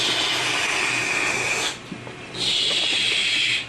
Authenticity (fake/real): real